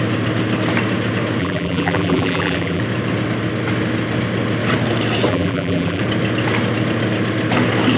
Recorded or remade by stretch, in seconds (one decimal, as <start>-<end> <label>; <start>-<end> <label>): 0.0-1.4 recorded; 1.4-2.8 remade; 2.8-5.3 recorded; 5.3-6.0 remade; 6.0-8.0 recorded